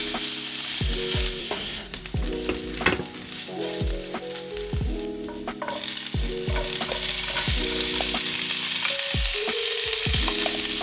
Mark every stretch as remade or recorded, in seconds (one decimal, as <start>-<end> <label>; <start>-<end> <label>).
0.0-1.4 recorded; 1.4-2.0 remade; 2.0-10.8 recorded